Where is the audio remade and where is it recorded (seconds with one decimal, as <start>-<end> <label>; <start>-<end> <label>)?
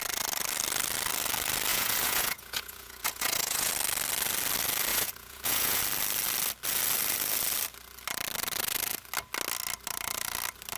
0.0-1.7 recorded; 1.7-3.7 remade; 3.7-4.9 recorded; 4.9-5.8 remade; 5.8-10.8 recorded